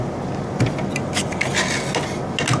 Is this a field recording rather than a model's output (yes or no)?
yes